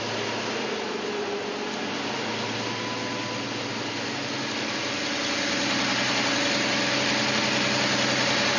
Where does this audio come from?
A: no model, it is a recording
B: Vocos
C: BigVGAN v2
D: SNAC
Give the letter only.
A